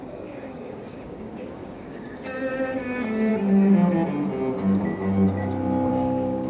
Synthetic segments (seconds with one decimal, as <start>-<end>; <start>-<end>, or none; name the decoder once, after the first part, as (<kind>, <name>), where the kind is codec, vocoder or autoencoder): 0.0-3.3 (codec, DAC); 5.9-6.5